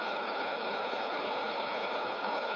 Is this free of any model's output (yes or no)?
no